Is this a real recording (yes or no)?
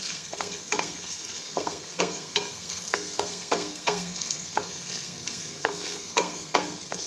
no